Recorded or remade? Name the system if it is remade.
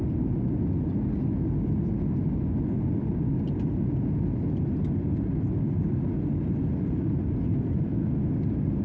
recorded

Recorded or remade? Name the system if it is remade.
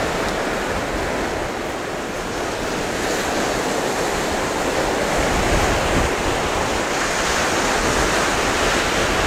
recorded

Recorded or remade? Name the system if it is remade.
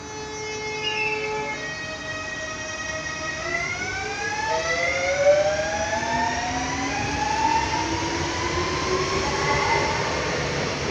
recorded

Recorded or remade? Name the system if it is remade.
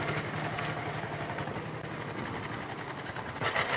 recorded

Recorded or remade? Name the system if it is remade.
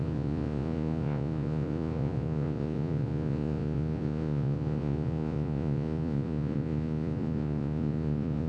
remade, vocoder, Vocos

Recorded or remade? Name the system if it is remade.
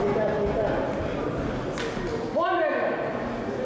recorded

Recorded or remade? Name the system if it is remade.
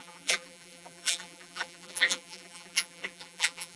remade, vocoder, BigVGAN v2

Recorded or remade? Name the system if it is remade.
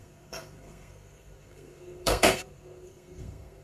remade, codec, SNAC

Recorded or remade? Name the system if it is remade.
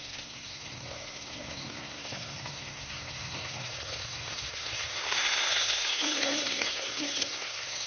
remade, codec, SNAC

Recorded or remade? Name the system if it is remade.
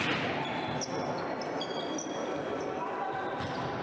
recorded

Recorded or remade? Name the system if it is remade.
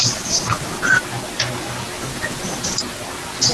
recorded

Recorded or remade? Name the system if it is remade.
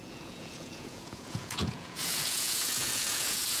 remade, vocoder, Vocos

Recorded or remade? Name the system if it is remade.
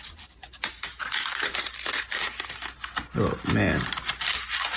recorded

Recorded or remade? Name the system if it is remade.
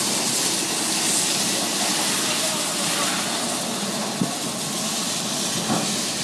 recorded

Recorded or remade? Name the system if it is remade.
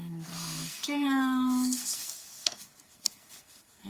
remade, codec, SNAC